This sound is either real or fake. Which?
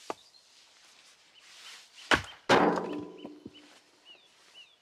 real